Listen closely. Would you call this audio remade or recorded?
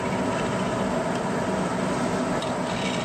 recorded